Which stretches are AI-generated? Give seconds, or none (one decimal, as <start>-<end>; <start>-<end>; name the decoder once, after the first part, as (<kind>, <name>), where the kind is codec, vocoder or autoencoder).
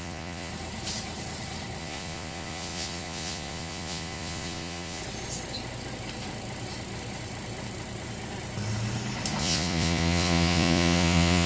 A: 0.0-0.5 (vocoder, Vocos); 1.8-5.0; 9.4-11.5